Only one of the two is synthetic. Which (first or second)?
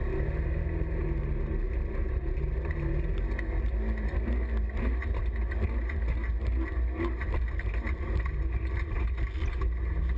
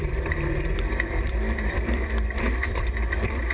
second